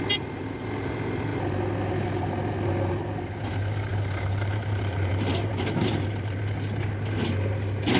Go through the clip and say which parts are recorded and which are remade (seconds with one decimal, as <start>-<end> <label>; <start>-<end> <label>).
0.0-3.9 recorded; 3.9-6.4 remade; 6.4-8.0 recorded

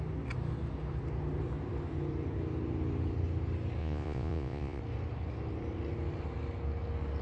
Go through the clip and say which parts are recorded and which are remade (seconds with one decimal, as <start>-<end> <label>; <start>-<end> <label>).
0.0-3.8 recorded; 3.8-4.8 remade; 4.8-7.2 recorded

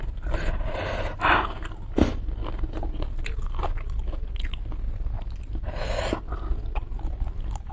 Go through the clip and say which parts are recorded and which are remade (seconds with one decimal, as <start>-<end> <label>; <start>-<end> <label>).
0.0-6.8 recorded; 6.8-7.7 remade

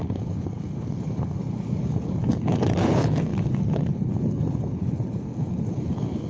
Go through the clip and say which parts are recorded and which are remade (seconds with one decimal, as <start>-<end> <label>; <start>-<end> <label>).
0.0-6.3 remade